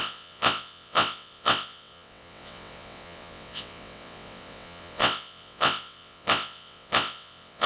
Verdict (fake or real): fake